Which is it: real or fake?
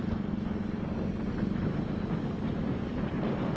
real